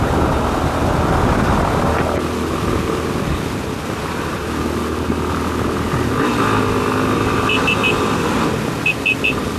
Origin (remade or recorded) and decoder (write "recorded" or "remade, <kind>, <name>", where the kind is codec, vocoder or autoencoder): recorded